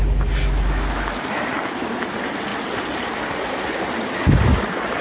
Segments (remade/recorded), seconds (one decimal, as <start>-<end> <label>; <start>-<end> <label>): 0.0-5.0 recorded